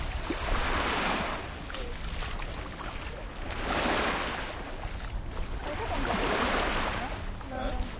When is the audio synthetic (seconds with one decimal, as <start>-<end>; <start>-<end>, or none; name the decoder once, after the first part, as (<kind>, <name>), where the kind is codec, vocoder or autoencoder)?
0.6-1.9 (vocoder, BigVGAN v2); 5.6-8.0